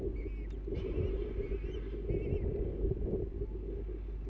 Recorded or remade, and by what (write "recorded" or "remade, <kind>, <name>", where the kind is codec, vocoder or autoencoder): recorded